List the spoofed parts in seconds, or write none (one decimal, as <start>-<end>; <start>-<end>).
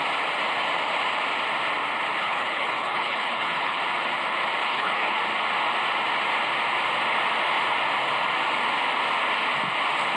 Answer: 2.2-3.8; 4.6-5.2